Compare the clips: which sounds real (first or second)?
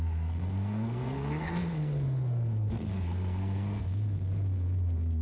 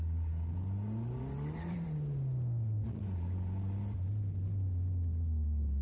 second